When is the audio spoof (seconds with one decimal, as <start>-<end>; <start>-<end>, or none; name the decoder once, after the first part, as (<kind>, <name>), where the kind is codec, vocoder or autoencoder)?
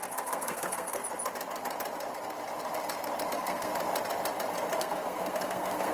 0.0-1.0 (codec, SNAC); 3.3-3.7; 4.8-5.9